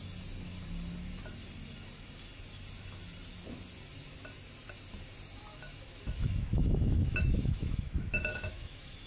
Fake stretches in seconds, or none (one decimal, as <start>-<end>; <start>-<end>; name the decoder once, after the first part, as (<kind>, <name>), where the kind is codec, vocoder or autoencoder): 5.5-9.1 (autoencoder, DAC-VAE)